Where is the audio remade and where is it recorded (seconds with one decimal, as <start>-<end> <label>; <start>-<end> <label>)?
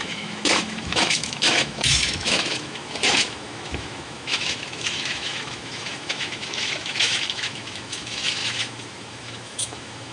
0.0-10.1 remade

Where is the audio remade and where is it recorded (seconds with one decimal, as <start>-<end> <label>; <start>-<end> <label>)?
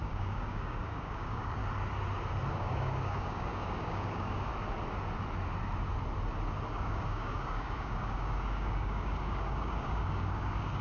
0.0-1.6 remade; 1.6-2.5 recorded; 2.5-4.5 remade; 4.5-6.7 recorded; 6.7-10.8 remade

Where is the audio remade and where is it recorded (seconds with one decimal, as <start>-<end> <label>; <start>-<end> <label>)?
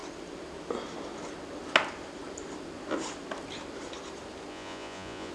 0.0-4.5 recorded; 4.5-5.3 remade